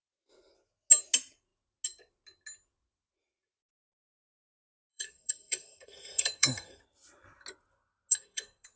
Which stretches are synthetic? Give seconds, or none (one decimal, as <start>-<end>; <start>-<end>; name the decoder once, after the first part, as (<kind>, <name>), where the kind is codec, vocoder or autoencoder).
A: 4.9-6.8 (codec, SNAC); 8.1-8.8